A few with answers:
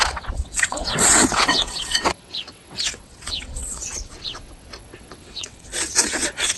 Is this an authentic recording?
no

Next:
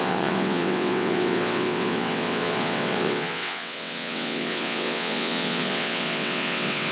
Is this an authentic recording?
no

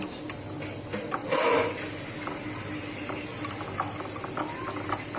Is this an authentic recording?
yes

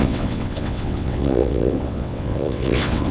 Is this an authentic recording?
no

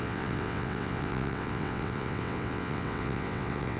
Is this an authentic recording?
no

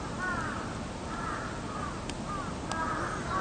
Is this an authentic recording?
yes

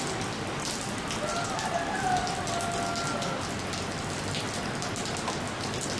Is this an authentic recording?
yes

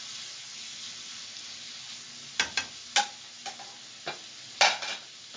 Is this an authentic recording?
yes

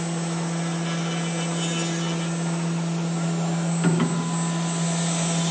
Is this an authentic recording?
yes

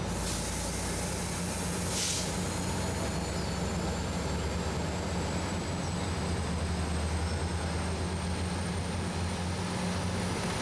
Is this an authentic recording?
yes